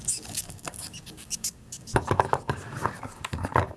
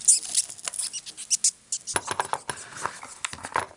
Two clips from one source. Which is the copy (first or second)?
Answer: first